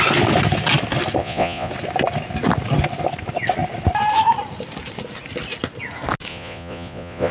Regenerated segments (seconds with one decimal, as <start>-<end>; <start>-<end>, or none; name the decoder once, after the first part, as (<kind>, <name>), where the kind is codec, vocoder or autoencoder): 1.2-1.7 (vocoder, Vocos); 6.3-7.3